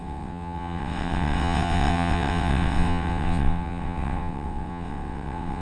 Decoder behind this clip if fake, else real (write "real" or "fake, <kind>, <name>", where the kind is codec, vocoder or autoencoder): fake, vocoder, WaveNeXt